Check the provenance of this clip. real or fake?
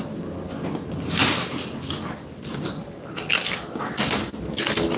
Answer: real